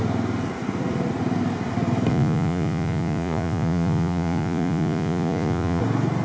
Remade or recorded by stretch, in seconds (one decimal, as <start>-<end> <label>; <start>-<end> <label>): 0.0-2.1 recorded; 2.1-5.8 remade; 5.8-6.2 recorded